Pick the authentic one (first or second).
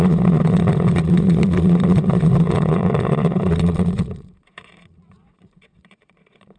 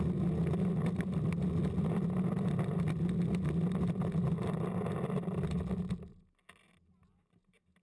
second